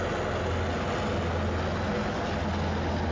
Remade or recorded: recorded